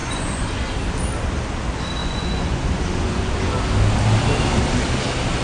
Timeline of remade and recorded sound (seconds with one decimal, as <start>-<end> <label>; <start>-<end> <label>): 0.0-0.7 remade; 0.7-2.0 recorded; 2.0-3.5 remade; 3.5-5.4 recorded